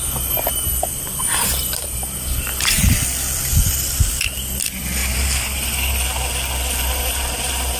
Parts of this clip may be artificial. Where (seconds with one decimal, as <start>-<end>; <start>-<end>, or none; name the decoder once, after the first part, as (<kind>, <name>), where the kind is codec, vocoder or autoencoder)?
0.7-3.5 (vocoder, BigVGAN v2); 5.0-5.9